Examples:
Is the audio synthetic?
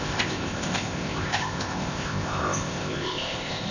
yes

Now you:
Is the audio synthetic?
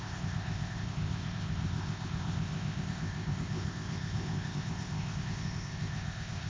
yes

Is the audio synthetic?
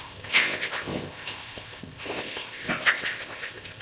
yes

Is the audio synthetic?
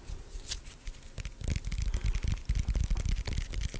no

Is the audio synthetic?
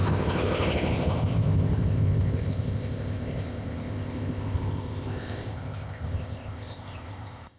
yes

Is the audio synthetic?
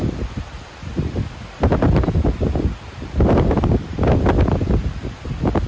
no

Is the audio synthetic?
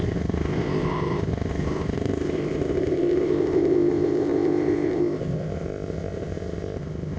yes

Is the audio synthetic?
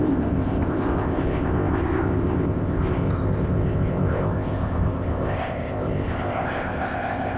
yes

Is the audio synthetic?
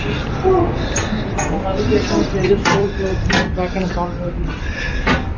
no